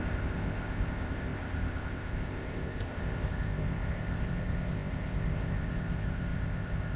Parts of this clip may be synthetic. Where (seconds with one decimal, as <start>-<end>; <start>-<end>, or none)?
0.0-7.0